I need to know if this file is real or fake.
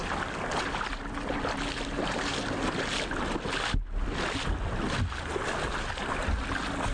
real